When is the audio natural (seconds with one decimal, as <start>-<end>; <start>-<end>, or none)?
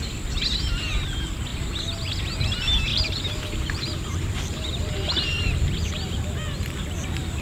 0.0-2.9; 4.7-7.4